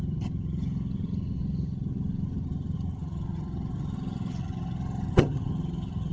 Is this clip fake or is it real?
fake